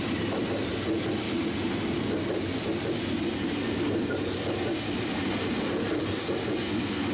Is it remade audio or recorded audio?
recorded